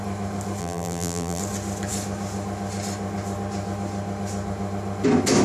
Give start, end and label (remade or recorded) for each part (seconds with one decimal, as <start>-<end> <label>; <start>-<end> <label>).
0.0-0.6 recorded; 0.6-1.4 remade; 1.4-5.4 recorded